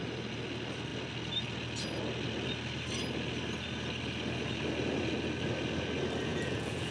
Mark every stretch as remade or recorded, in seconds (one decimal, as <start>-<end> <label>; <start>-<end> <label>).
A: 0.0-6.3 recorded; 6.3-6.9 remade